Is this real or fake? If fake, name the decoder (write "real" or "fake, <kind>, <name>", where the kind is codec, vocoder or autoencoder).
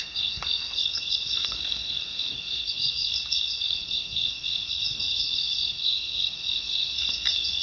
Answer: fake, codec, SNAC